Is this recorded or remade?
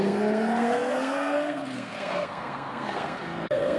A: remade